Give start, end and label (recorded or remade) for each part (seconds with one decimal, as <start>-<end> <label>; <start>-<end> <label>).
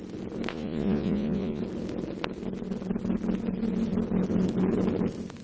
0.0-0.5 recorded; 0.5-1.6 remade; 1.6-5.4 recorded